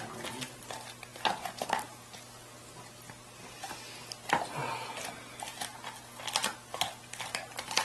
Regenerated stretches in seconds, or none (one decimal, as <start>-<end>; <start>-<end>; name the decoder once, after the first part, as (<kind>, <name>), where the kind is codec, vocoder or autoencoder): none